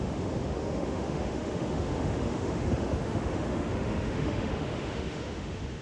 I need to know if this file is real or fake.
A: fake